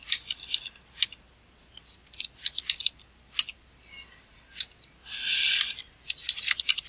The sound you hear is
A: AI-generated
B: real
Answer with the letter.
B